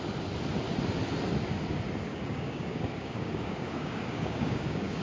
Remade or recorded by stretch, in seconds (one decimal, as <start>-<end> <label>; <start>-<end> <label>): 0.0-2.1 recorded; 2.1-5.0 remade